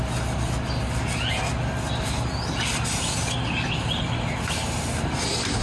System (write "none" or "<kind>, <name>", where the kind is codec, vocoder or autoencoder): none